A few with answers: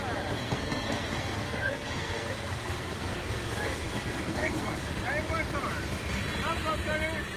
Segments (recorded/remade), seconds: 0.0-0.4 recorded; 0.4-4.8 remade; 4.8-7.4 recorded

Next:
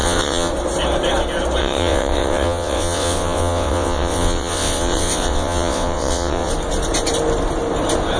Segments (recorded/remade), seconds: 0.0-0.5 remade; 0.5-1.6 recorded; 1.6-6.5 remade; 6.5-8.2 recorded

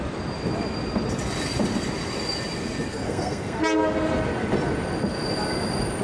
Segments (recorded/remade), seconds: 0.0-2.9 recorded; 2.9-3.6 remade; 3.6-6.0 recorded

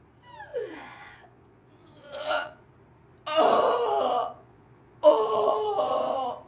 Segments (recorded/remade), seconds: 0.0-0.5 recorded; 0.5-2.6 remade; 2.6-4.2 recorded; 4.2-5.7 remade; 5.7-6.5 recorded

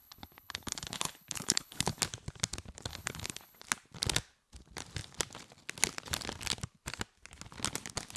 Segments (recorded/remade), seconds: 0.0-2.0 remade; 2.0-2.9 recorded; 2.9-3.6 remade; 3.6-8.2 recorded

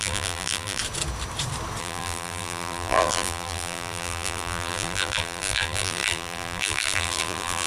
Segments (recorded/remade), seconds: 0.0-0.8 remade; 0.8-1.8 recorded; 1.8-7.7 remade

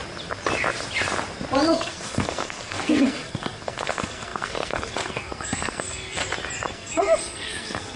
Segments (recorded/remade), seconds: 0.0-1.7 recorded; 1.7-6.2 remade; 6.2-6.7 recorded; 6.7-8.0 remade